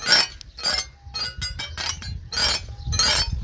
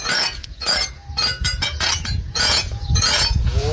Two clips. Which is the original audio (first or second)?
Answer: first